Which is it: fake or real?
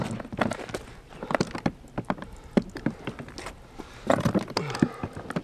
real